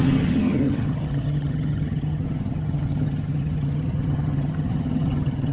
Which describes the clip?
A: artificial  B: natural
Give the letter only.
A